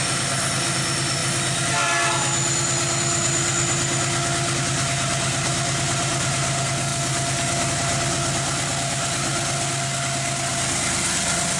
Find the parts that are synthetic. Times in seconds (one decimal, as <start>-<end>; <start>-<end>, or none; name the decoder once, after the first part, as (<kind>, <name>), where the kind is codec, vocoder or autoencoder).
none